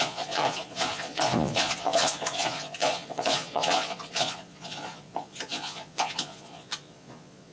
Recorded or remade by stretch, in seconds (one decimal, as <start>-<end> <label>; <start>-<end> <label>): 0.0-7.5 remade